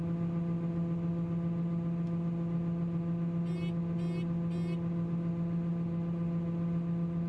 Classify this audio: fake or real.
real